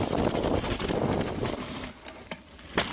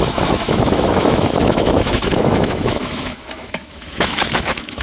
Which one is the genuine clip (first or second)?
first